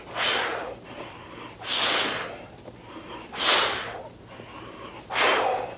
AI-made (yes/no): no